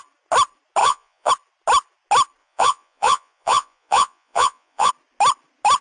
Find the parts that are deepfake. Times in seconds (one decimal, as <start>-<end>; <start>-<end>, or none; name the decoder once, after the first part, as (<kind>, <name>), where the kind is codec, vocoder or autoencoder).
0.8-1.3 (vocoder, Vocos); 2.4-4.9